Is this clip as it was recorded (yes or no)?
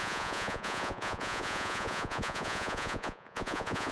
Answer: no